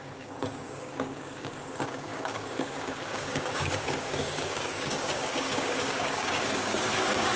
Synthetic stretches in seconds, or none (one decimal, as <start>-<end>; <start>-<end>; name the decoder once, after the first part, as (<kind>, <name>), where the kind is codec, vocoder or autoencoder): 0.0-7.4 (codec, DAC)